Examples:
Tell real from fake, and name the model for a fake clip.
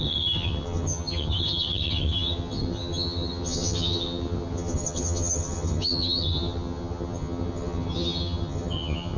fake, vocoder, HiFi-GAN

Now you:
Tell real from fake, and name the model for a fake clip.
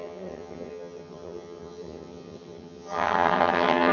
fake, vocoder, HiFi-GAN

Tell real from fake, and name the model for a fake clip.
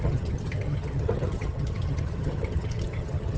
fake, vocoder, HiFi-GAN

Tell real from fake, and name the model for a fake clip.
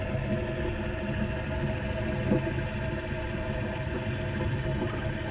real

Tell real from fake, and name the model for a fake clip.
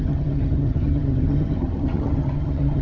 fake, vocoder, HiFi-GAN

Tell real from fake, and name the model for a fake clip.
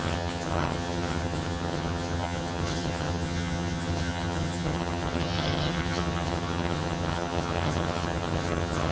fake, vocoder, HiFi-GAN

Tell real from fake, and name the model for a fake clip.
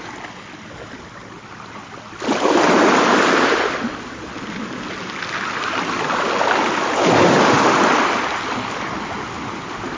real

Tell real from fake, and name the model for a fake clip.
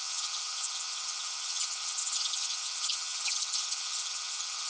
fake, vocoder, HiFi-GAN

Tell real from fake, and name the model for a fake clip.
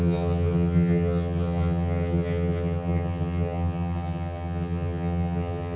fake, vocoder, HiFi-GAN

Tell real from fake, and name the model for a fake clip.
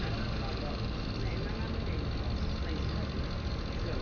real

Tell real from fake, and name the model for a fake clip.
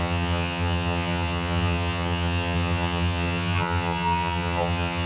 fake, vocoder, HiFi-GAN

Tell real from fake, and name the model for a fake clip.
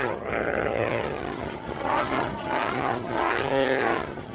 fake, vocoder, HiFi-GAN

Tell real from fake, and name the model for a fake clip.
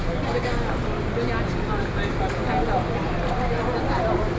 real